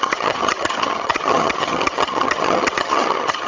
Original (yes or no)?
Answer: no